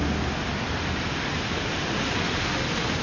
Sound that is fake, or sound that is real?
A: real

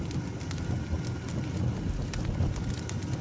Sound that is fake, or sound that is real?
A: real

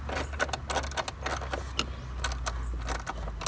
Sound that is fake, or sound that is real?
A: real